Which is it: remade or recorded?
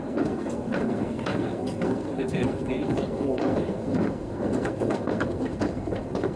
remade